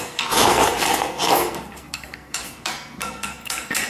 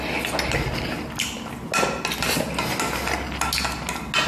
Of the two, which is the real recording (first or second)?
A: second